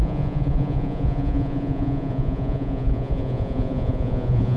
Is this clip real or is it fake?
fake